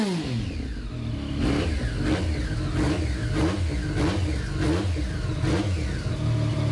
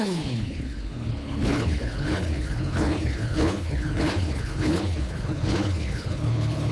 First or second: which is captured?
first